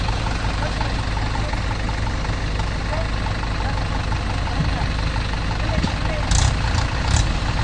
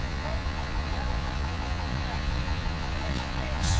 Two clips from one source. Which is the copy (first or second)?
second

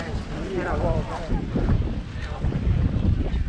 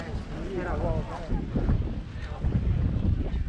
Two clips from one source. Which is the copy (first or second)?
first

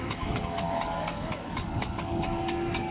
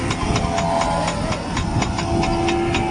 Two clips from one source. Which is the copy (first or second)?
first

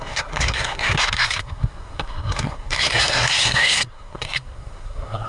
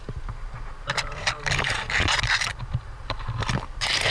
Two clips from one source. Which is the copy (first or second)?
first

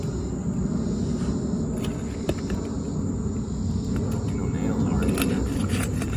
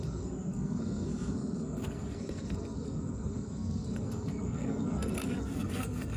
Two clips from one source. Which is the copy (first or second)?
second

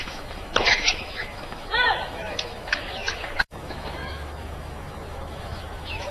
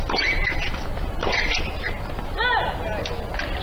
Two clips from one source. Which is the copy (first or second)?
first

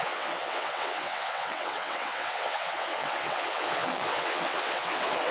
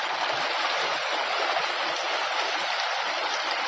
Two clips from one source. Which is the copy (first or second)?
first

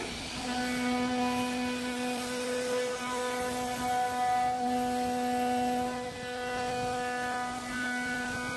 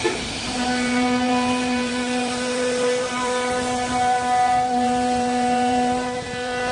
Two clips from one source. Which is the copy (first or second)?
second